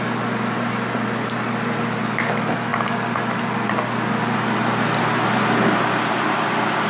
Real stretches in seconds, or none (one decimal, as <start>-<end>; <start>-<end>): 0.0-6.9

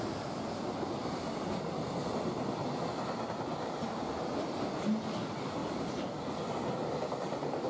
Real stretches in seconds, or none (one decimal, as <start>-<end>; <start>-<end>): 0.0-7.7

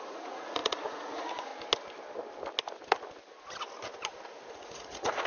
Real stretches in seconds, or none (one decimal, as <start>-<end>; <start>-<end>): 1.5-4.5

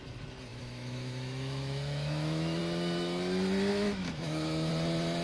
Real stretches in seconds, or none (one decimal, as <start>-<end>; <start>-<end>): 0.0-0.5; 2.6-3.7; 4.7-5.2

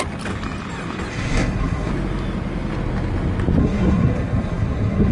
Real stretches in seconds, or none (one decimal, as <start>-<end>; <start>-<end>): 0.0-1.1; 1.9-3.6

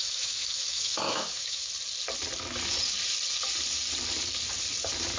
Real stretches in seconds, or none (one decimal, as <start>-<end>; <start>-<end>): 1.7-5.2